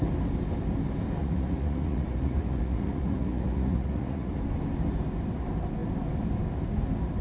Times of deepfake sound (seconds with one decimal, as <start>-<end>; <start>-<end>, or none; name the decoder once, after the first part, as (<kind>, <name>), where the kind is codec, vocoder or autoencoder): 1.2-4.3 (vocoder, Vocos)